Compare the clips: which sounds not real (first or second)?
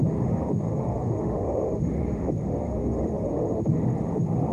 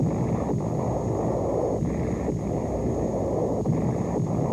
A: first